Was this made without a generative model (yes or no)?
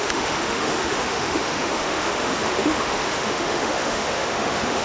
no